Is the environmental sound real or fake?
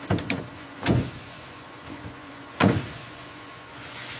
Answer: fake